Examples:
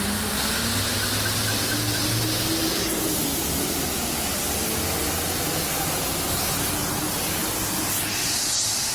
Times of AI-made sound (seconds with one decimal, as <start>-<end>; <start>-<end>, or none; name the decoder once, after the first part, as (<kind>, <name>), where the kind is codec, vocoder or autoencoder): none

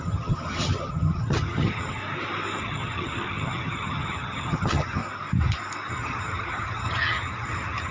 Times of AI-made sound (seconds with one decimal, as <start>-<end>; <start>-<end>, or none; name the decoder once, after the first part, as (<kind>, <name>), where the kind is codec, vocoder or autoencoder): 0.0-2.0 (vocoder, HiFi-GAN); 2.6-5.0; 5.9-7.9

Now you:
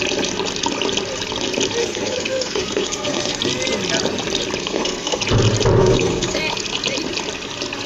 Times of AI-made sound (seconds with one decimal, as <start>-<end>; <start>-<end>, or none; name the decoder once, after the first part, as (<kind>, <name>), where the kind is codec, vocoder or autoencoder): 1.8-3.4 (codec, SNAC); 4.6-5.2; 5.8-6.4

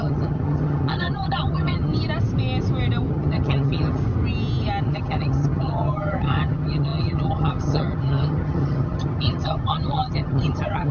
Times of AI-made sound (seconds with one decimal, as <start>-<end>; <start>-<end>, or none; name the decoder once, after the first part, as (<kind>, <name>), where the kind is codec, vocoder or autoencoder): 0.0-1.9 (vocoder, HiFi-GAN); 3.1-4.0; 4.8-10.9

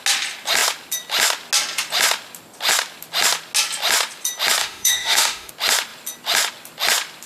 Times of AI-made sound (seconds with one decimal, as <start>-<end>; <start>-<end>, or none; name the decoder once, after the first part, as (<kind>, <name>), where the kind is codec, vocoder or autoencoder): 4.6-5.5 (autoencoder, DAC-VAE)

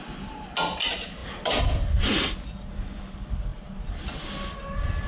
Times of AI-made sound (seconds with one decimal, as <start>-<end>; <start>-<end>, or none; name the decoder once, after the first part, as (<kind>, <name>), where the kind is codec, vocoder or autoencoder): none

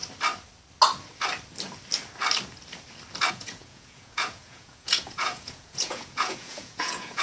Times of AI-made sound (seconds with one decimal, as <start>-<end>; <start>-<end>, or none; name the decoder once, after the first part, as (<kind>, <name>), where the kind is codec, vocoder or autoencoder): 3.3-7.2 (vocoder, Vocos)

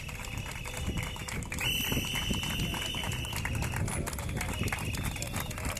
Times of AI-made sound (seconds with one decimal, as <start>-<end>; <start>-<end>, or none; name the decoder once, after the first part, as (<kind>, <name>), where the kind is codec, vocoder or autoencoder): none